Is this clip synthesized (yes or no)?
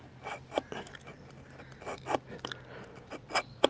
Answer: no